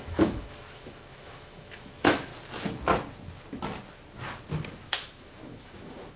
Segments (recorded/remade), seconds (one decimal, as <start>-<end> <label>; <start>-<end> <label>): 0.0-2.3 remade; 2.3-4.9 recorded; 4.9-6.2 remade

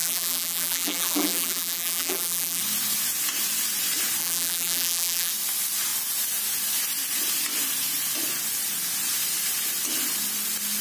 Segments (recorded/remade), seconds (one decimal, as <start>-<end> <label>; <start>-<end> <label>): 0.0-2.6 remade; 2.6-4.2 recorded; 4.2-5.3 remade; 5.3-10.8 recorded

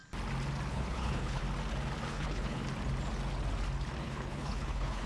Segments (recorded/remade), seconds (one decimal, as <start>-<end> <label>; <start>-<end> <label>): 0.0-0.7 recorded; 0.7-1.4 remade; 1.4-2.1 recorded; 2.1-2.6 remade; 2.6-4.0 recorded; 4.0-5.1 remade

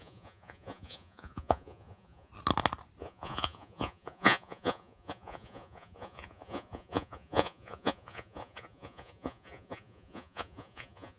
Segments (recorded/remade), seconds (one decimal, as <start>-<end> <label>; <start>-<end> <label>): 0.0-2.3 remade; 2.3-3.0 recorded; 3.0-11.2 remade

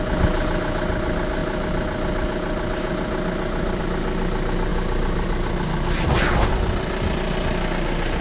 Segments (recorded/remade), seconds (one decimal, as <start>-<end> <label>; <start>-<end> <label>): 0.0-8.2 recorded

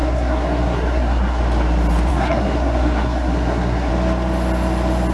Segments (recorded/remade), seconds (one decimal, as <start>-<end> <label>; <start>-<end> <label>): 0.0-1.4 remade; 1.4-2.1 recorded; 2.1-3.9 remade; 3.9-5.1 recorded

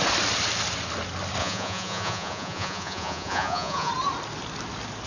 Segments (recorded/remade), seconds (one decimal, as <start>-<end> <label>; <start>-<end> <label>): 0.0-1.4 recorded; 1.4-3.9 remade; 3.9-5.1 recorded